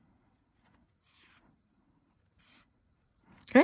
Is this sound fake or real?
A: fake